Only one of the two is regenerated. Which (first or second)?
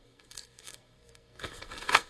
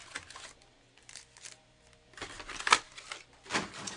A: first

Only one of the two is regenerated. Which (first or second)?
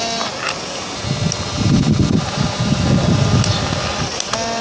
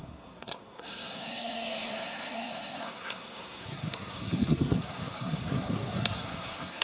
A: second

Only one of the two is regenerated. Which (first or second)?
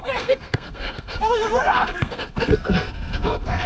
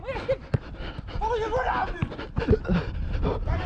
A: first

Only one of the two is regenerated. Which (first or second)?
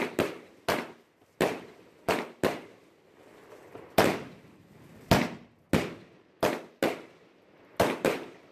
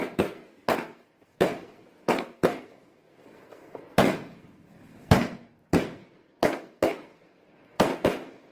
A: second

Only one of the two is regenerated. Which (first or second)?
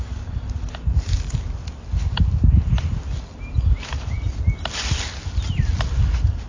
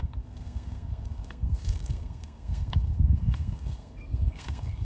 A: second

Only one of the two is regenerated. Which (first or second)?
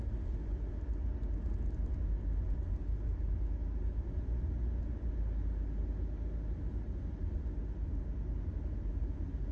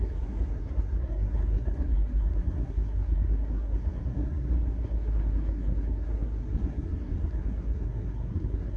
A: second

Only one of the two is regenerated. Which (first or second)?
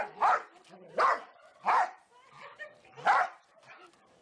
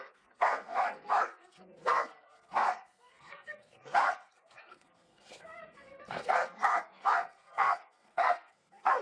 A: second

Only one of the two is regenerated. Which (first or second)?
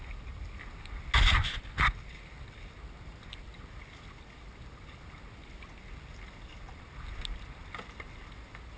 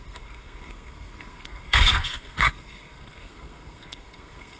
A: second